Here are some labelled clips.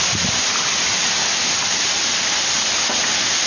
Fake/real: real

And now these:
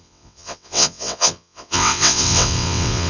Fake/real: fake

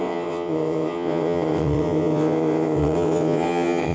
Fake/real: fake